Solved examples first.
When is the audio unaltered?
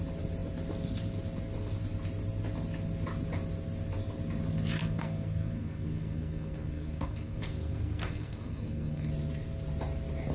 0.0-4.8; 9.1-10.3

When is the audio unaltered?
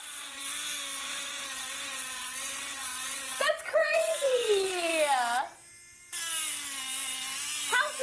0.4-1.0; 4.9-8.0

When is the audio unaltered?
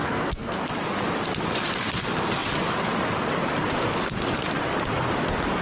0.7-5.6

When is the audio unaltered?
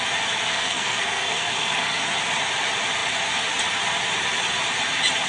0.0-0.5; 2.0-5.3